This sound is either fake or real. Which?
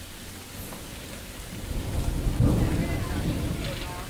real